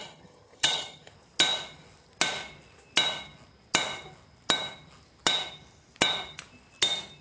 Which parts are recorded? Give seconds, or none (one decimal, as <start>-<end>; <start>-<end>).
1.1-7.2